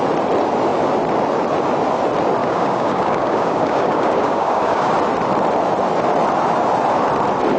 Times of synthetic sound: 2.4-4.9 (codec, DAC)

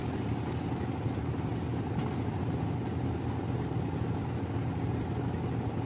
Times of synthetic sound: none